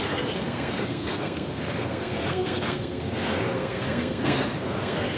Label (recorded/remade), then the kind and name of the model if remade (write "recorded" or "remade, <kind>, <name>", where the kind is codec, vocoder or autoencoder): remade, codec, SNAC